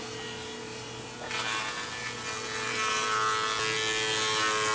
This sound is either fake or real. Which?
real